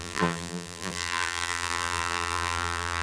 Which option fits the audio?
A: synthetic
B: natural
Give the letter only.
A